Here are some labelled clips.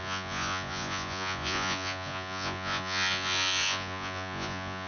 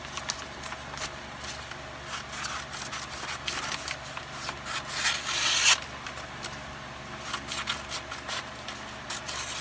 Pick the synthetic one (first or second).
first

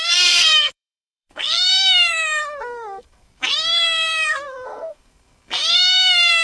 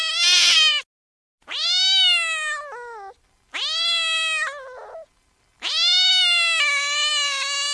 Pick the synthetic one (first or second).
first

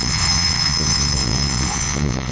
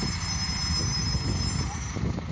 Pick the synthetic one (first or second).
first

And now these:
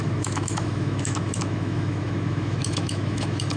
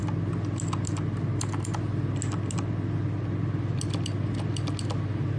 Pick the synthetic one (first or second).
first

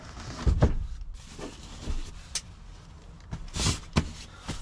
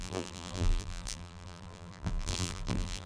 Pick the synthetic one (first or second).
second